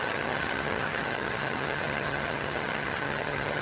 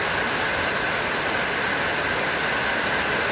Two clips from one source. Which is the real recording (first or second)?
second